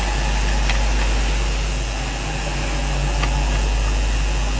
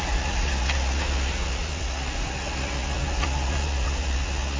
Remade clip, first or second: second